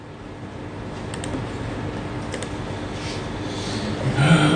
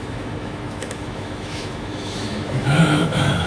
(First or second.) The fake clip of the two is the second